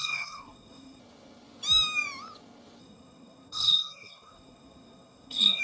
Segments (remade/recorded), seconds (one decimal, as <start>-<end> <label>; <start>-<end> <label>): 0.0-1.0 remade; 1.0-2.8 recorded; 2.8-5.6 remade